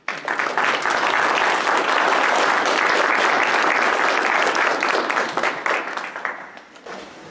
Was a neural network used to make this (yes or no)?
no